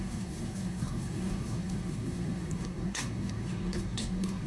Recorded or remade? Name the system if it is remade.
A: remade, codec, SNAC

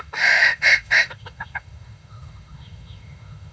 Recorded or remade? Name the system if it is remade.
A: remade, autoencoder, DAC-VAE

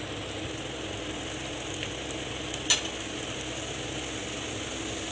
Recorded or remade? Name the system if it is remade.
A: recorded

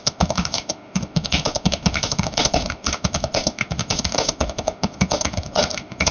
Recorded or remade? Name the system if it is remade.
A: remade, autoencoder, DAC-VAE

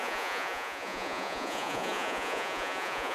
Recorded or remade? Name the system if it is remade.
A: remade, vocoder, Vocos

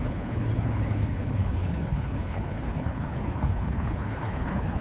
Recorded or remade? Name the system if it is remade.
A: remade, codec, HILCodec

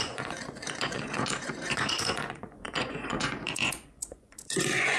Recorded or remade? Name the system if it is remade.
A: remade, vocoder, Vocos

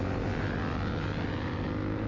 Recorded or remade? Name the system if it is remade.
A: recorded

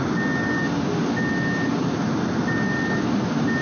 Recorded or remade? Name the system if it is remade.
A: recorded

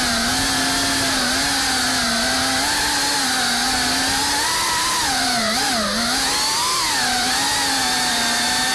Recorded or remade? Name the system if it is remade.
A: recorded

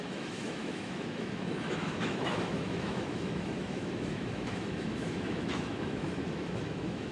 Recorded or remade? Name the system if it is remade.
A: remade, autoencoder, DAC-VAE